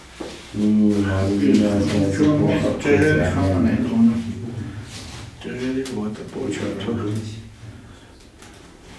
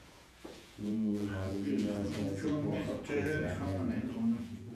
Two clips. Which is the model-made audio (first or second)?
second